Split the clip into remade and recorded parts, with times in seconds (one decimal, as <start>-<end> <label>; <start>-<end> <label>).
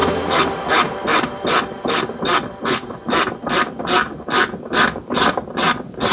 0.0-6.1 recorded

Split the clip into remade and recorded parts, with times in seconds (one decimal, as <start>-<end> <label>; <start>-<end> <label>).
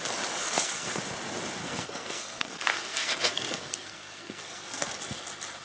0.0-0.4 recorded; 0.4-1.0 remade; 1.0-1.6 recorded; 1.6-5.0 remade; 5.0-5.6 recorded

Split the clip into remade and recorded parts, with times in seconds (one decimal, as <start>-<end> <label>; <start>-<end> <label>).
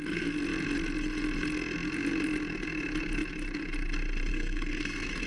0.0-4.3 recorded; 4.3-5.3 remade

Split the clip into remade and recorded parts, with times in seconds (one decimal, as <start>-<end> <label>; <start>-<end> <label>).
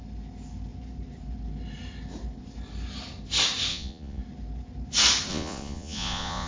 0.0-3.7 recorded; 3.7-4.2 remade; 4.2-5.3 recorded; 5.3-6.5 remade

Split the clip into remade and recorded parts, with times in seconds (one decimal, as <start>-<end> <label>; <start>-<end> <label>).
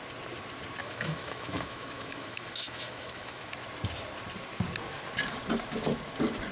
0.0-0.8 recorded; 0.8-3.5 remade; 3.5-6.5 recorded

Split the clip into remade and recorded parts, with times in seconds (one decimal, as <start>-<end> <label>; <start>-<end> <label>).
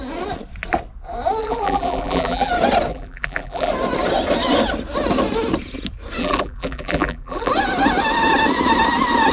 0.0-1.4 recorded; 1.4-2.5 remade; 2.5-2.9 recorded; 2.9-3.7 remade; 3.7-6.2 recorded; 6.2-7.5 remade; 7.5-9.3 recorded